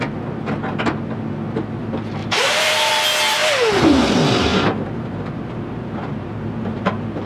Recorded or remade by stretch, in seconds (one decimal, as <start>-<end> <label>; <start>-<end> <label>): 0.0-2.2 recorded; 2.2-2.9 remade; 2.9-4.5 recorded; 4.5-7.3 remade